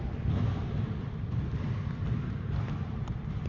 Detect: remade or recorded recorded